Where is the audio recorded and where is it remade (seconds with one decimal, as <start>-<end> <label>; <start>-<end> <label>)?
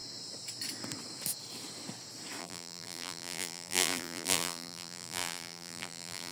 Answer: 0.0-2.4 recorded; 2.4-6.3 remade